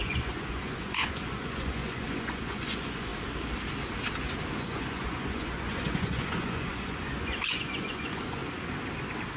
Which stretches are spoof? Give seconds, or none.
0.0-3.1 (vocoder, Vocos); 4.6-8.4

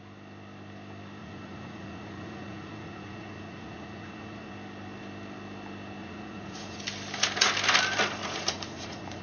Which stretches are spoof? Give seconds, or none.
1.2-4.5 (vocoder, Vocos); 6.0-6.8; 8.2-9.2

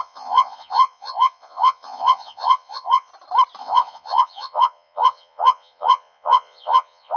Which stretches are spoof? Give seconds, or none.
0.0-3.1 (vocoder, Vocos); 3.6-7.2

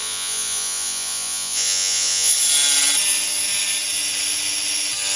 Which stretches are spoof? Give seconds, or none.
0.0-2.3 (vocoder, Vocos)

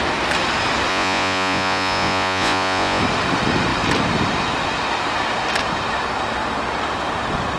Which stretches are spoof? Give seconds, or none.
0.9-3.0 (vocoder, Vocos)

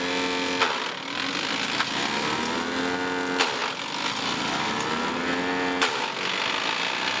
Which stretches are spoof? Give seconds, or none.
none

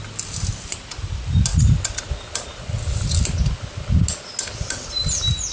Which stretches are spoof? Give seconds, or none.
none